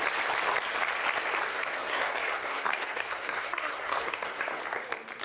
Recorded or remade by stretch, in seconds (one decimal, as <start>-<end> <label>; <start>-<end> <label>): 0.0-1.5 recorded; 1.5-4.6 remade; 4.6-5.2 recorded